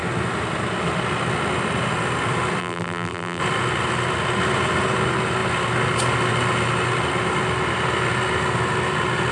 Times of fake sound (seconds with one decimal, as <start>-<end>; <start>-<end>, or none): 2.6-3.4